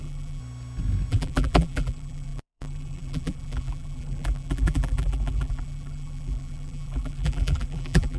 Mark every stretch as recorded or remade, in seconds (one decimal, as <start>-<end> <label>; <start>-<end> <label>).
0.0-0.4 remade; 0.4-1.1 recorded; 1.1-8.2 remade